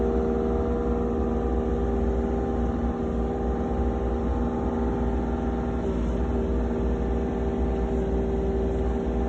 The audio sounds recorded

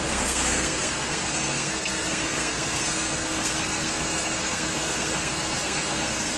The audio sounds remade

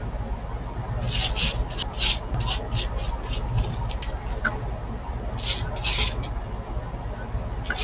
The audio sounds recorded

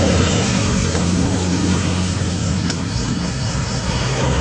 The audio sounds remade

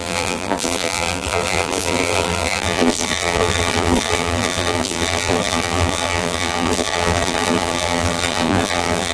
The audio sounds remade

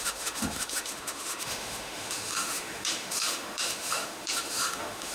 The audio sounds remade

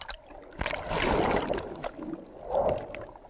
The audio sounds recorded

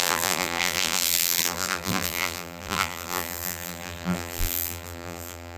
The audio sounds remade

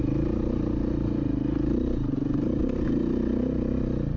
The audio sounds recorded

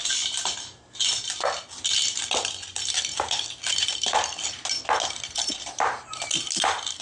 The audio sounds recorded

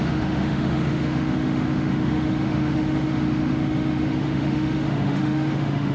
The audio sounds remade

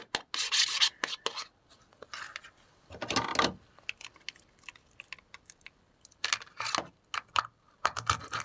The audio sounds recorded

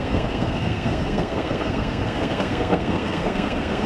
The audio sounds remade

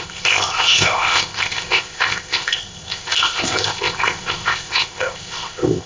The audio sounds remade